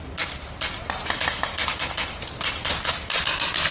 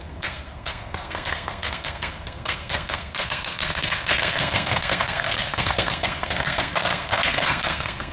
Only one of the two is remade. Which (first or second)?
second